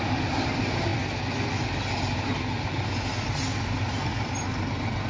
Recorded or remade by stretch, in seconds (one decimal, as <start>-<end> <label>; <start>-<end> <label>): 0.0-5.1 recorded